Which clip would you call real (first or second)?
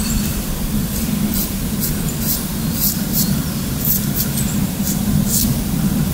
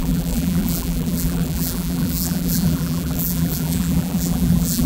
first